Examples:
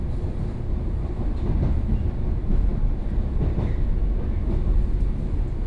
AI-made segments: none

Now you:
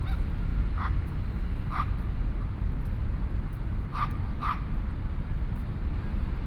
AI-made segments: none

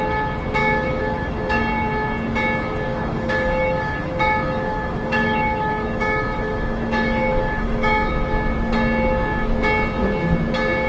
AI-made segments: 0.6-1.6 (autoencoder, DAC-VAE); 2.9-8.1